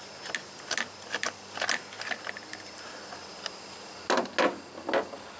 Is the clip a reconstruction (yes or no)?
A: no